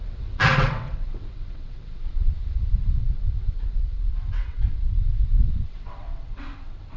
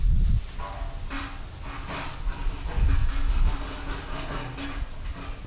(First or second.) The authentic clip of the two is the second